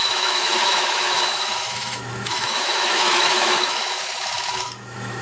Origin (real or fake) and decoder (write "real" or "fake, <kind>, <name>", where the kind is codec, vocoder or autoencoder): fake, autoencoder, DAC-VAE